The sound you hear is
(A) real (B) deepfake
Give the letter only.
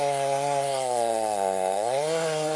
B